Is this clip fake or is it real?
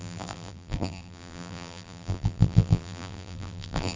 fake